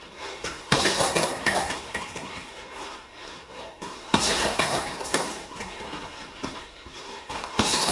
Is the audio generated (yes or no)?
yes